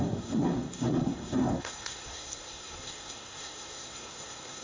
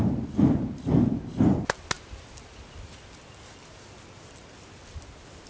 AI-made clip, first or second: first